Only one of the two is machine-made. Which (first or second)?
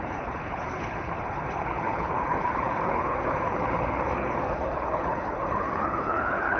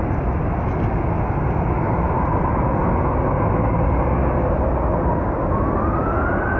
first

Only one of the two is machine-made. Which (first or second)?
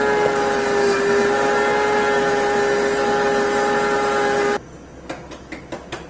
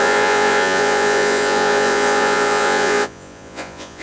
second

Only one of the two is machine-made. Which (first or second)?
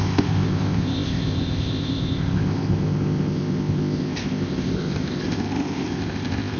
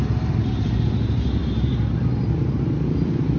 first